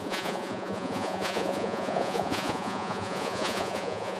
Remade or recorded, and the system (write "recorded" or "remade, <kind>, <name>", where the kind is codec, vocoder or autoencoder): remade, vocoder, Vocos